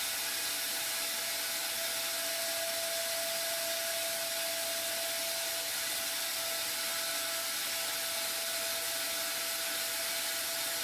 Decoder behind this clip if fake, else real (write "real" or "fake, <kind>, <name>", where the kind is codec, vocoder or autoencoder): real